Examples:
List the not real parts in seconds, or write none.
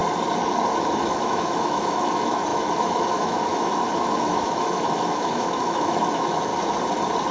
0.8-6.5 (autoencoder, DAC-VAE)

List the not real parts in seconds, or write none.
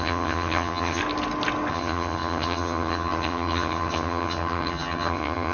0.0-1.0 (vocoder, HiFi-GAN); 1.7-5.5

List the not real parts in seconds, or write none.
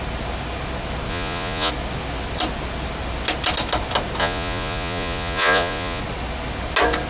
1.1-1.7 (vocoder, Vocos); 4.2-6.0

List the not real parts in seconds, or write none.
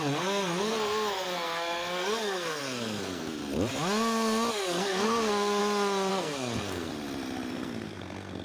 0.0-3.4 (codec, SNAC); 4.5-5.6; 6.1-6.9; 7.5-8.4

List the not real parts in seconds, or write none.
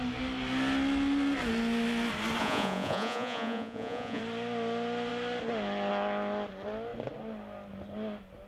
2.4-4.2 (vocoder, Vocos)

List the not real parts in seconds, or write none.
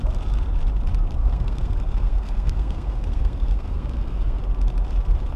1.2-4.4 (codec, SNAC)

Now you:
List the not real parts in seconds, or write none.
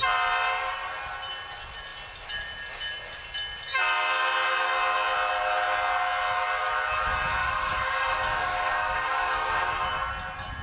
7.4-9.7 (codec, DAC)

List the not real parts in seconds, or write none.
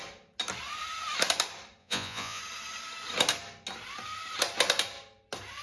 1.8-2.4 (vocoder, Vocos)